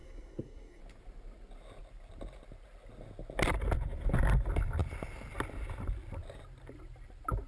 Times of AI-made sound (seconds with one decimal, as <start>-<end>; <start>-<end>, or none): 0.0-0.8